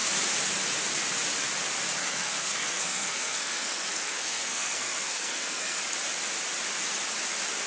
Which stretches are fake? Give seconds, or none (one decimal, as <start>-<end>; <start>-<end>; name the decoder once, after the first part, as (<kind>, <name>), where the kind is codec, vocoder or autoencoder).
2.0-5.8 (codec, SNAC)